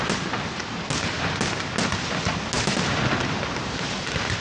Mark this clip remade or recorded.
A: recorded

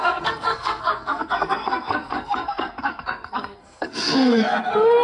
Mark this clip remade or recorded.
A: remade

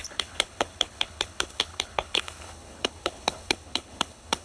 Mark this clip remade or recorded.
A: remade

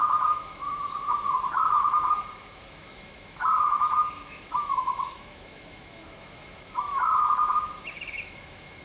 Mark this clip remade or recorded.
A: remade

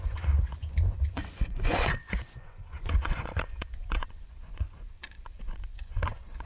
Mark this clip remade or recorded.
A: remade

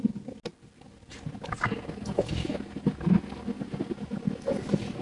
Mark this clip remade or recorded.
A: recorded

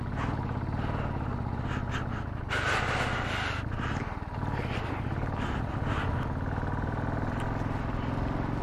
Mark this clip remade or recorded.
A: recorded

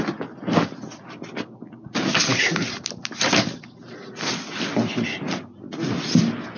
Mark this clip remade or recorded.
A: recorded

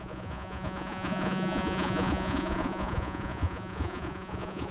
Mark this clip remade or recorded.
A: remade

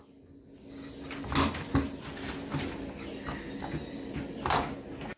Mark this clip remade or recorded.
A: recorded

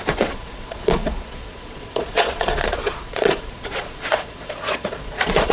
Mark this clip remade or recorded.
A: remade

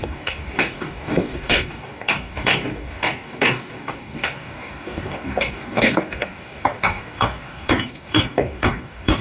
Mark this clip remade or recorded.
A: remade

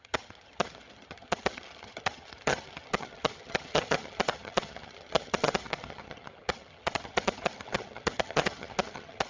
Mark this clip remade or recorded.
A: remade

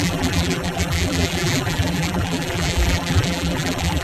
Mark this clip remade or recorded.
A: remade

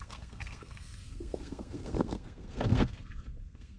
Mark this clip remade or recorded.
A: remade